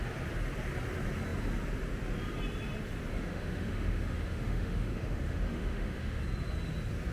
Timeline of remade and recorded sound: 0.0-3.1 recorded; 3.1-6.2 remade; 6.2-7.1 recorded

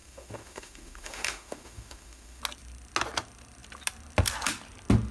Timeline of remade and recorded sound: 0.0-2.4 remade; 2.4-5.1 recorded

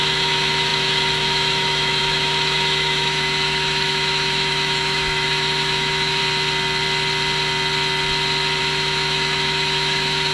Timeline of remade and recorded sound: 0.0-6.2 remade; 6.2-8.6 recorded; 8.6-10.3 remade

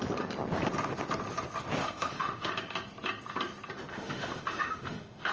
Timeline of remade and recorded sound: 0.0-1.8 recorded; 1.8-2.5 remade; 2.5-3.9 recorded; 3.9-5.3 remade

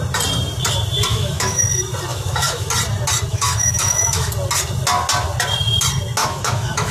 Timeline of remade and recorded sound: 0.0-1.1 recorded; 1.1-1.6 remade; 1.6-2.1 recorded; 2.1-2.7 remade; 2.7-3.3 recorded; 3.3-4.3 remade; 4.3-6.2 recorded; 6.2-6.9 remade

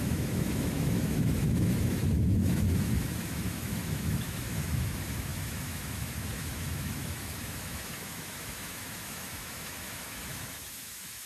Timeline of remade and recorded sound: 0.0-11.3 remade

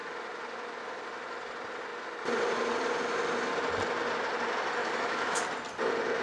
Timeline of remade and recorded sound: 0.0-4.8 recorded; 4.8-5.4 remade; 5.4-6.2 recorded